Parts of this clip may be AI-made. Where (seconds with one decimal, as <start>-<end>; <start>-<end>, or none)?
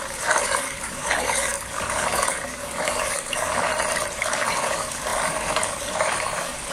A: 0.0-3.7; 4.2-6.7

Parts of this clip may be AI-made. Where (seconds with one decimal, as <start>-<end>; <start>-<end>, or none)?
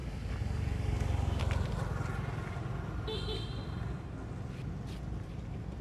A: 0.0-1.4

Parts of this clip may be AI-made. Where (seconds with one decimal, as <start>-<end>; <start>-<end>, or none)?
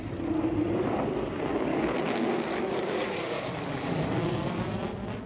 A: 1.5-4.6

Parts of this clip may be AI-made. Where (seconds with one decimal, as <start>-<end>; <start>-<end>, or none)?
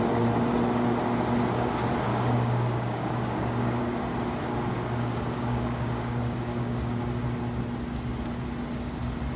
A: 2.1-3.8; 4.7-7.0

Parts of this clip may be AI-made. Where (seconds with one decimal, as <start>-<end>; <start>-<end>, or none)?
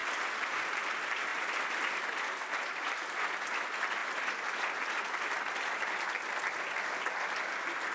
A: none